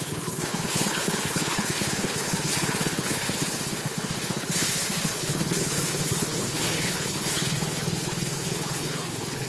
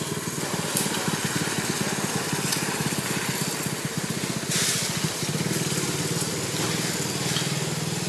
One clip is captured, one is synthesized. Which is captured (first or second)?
second